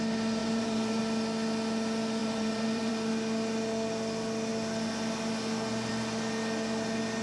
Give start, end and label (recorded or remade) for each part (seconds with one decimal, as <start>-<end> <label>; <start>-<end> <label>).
0.0-0.4 recorded; 0.4-1.0 remade; 1.0-2.2 recorded; 2.2-2.9 remade; 2.9-7.2 recorded